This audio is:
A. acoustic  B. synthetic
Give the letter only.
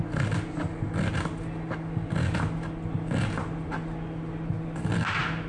A